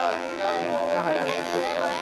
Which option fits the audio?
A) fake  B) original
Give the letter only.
A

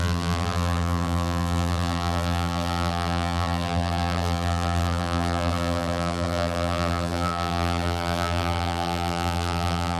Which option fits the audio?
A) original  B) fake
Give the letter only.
B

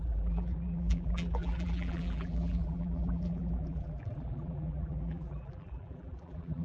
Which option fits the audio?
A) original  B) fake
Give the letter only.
B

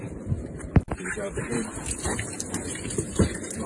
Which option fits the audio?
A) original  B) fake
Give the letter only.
B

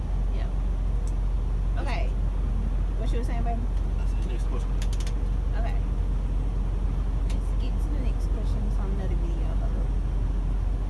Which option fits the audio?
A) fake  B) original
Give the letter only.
B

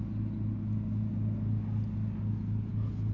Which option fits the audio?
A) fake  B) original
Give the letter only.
B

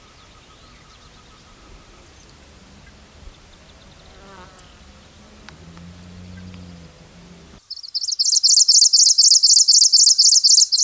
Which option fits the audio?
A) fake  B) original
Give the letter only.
B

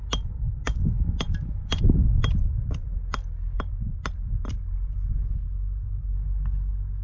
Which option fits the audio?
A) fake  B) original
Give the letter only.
B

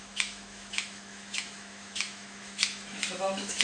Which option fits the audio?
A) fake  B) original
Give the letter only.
A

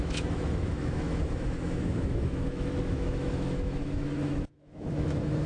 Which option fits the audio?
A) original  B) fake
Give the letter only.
B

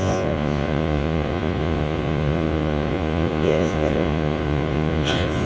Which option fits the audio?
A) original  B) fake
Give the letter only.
B